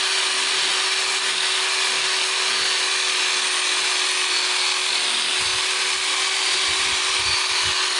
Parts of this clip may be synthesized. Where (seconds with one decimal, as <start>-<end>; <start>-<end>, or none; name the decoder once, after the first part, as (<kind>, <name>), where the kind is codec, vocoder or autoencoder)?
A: none